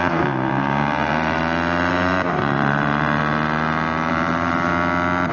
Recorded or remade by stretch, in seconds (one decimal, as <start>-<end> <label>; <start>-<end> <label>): 0.0-1.4 remade; 1.4-1.9 recorded; 1.9-3.2 remade; 3.2-4.1 recorded; 4.1-4.7 remade; 4.7-5.3 recorded